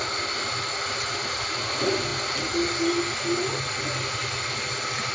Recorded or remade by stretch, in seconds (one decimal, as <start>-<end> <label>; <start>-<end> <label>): 0.0-5.1 recorded